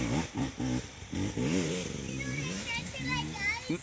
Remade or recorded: recorded